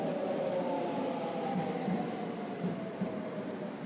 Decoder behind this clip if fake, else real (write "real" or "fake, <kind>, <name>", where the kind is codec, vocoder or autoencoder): real